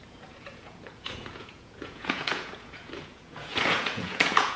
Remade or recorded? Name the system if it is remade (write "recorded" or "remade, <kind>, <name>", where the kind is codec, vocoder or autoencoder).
remade, vocoder, Vocos